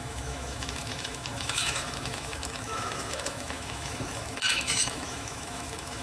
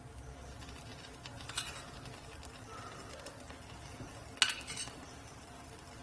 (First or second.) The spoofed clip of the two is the first